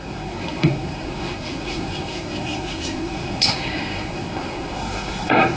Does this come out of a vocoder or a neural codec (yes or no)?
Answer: yes